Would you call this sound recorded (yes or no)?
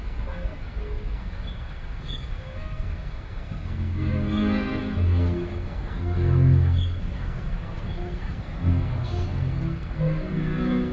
no